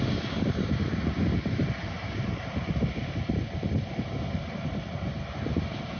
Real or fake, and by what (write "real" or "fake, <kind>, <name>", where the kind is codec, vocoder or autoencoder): real